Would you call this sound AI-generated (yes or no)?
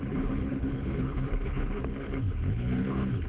yes